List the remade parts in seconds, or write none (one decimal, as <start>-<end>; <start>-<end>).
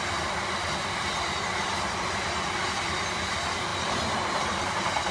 none